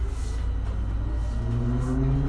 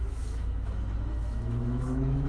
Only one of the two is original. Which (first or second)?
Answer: first